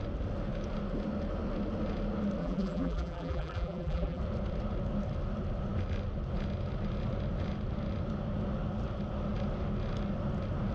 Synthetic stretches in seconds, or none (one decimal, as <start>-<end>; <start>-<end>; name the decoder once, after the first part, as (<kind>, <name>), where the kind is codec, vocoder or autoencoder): 2.4-4.2 (vocoder, BigVGAN v2)